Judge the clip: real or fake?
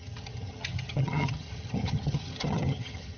fake